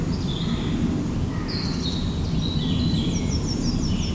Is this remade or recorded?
recorded